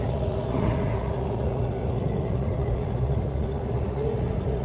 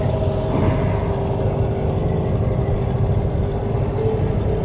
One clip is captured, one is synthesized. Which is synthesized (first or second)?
first